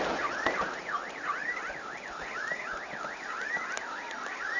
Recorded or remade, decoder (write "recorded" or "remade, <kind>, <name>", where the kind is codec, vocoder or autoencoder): recorded